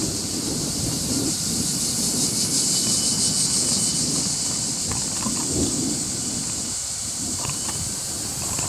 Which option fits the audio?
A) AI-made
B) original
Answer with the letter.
B